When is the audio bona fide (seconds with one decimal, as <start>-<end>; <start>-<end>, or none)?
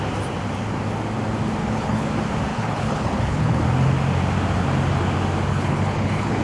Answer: 0.0-1.6; 2.1-2.5; 3.6-5.5